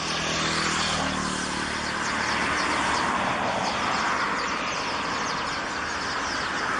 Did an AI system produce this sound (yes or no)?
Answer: no